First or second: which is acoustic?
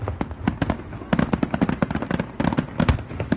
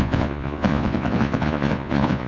first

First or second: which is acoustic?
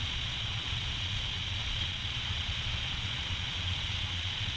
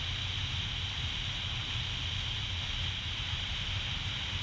second